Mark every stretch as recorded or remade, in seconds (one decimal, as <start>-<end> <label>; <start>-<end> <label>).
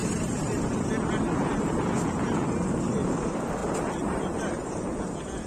0.0-0.8 remade; 0.8-5.5 recorded